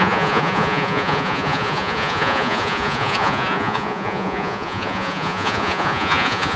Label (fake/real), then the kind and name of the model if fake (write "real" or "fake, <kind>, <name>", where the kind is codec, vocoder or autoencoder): fake, vocoder, Vocos